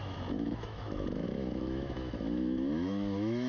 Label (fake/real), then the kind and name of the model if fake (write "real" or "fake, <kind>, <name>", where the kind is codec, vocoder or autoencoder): fake, autoencoder, DAC-VAE